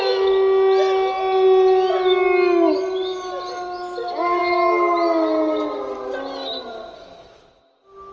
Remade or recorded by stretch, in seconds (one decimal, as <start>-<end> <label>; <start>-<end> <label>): 0.0-8.1 recorded